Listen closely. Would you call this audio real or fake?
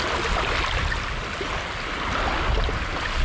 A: real